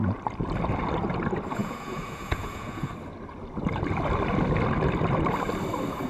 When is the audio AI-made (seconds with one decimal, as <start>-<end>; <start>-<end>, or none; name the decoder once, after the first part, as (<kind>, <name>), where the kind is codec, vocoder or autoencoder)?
1.6-2.9 (vocoder, Vocos)